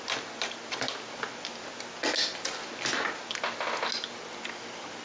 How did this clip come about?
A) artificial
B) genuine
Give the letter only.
B